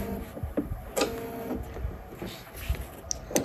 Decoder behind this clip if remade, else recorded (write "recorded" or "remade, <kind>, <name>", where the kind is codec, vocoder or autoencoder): recorded